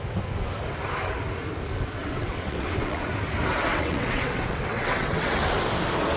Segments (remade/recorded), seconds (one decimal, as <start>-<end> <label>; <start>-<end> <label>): 0.0-2.0 recorded; 2.0-3.1 remade; 3.1-3.7 recorded; 3.7-5.4 remade; 5.4-6.2 recorded